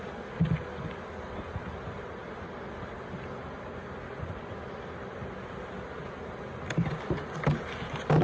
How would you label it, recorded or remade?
recorded